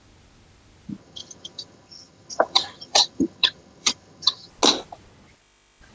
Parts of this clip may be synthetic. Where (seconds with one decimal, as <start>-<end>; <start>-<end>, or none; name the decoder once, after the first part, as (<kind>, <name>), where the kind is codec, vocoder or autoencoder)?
1.0-4.5 (vocoder, HiFi-GAN)